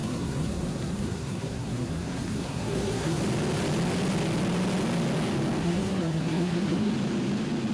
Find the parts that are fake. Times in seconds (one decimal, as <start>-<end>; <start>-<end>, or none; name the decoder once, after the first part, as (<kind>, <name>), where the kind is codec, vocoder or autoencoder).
0.0-3.2 (codec, SNAC); 5.6-6.9